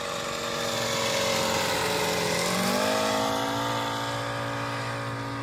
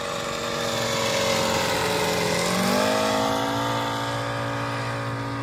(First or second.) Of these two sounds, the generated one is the first